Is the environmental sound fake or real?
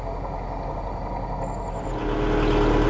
real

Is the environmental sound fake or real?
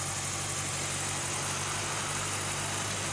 real